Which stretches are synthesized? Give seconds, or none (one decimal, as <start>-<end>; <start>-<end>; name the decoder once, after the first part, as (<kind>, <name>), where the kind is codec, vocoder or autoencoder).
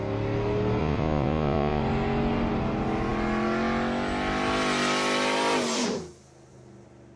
0.8-1.8 (vocoder, Vocos)